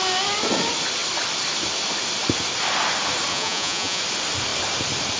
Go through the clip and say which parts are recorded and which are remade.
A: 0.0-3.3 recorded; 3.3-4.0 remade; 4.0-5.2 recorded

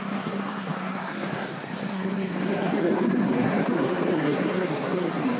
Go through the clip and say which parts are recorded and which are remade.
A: 0.0-5.4 remade

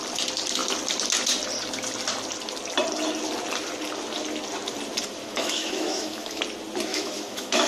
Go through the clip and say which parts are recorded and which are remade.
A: 0.0-5.3 recorded; 5.3-6.4 remade; 6.4-6.9 recorded; 6.9-7.7 remade

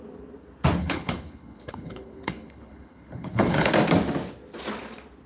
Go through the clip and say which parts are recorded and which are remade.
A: 0.0-0.8 recorded; 0.8-3.7 remade; 3.7-5.3 recorded

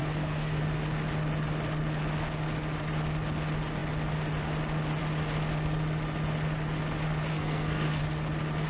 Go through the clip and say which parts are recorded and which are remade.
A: 0.0-0.6 remade; 0.6-7.3 recorded; 7.3-8.0 remade; 8.0-8.7 recorded

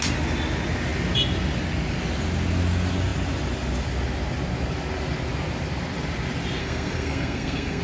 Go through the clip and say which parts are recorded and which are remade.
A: 0.0-6.6 recorded; 6.6-7.8 remade